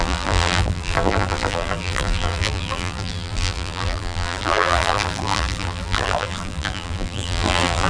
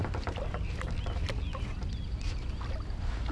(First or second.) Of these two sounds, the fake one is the first